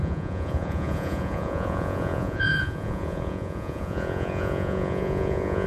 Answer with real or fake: fake